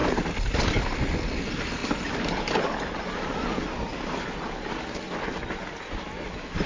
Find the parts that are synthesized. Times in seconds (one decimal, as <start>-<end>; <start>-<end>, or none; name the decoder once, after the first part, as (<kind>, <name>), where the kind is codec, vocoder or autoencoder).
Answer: 1.8-4.6 (vocoder, BigVGAN v2)